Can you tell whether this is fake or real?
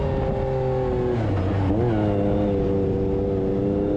real